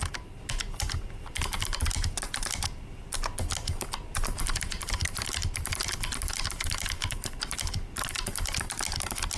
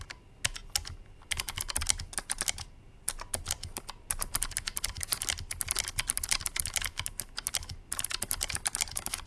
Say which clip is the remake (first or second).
first